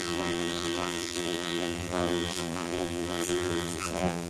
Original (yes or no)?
no